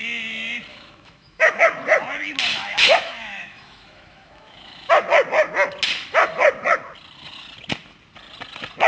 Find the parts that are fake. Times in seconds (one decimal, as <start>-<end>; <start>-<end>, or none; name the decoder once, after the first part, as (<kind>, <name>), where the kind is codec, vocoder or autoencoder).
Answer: 0.7-1.6 (autoencoder, DAC-VAE); 2.5-4.9